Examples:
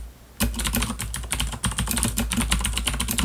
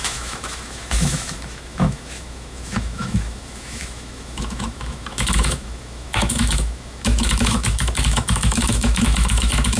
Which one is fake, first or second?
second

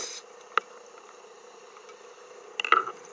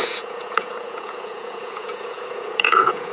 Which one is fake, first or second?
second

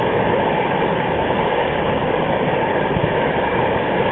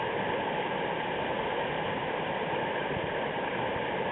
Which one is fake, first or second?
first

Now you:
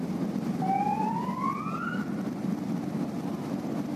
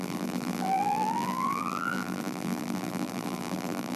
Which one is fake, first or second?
second